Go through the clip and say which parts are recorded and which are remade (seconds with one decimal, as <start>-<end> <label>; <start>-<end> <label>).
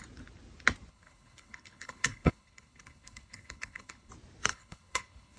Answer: 0.0-0.9 recorded; 0.9-4.1 remade; 4.1-4.5 recorded; 4.5-5.4 remade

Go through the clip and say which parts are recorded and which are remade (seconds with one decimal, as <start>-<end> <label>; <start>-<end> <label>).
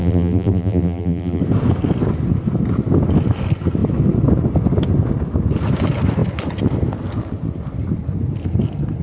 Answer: 0.0-1.4 remade; 1.4-9.0 recorded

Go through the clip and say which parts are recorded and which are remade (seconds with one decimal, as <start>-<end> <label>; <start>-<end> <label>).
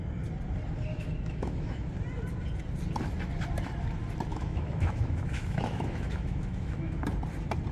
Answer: 0.0-0.9 recorded; 0.9-1.9 remade; 1.9-4.3 recorded; 4.3-7.0 remade; 7.0-7.7 recorded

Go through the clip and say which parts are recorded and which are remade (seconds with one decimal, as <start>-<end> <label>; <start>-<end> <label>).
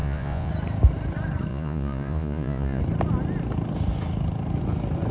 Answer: 0.0-0.5 remade; 0.5-1.5 recorded; 1.5-2.8 remade; 2.8-5.1 recorded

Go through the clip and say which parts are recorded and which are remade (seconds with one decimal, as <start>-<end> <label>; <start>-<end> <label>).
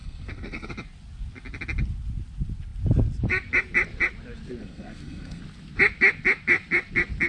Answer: 0.0-0.7 remade; 0.7-4.6 recorded; 4.6-5.4 remade; 5.4-7.3 recorded